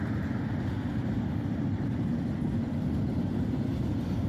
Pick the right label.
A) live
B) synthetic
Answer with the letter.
B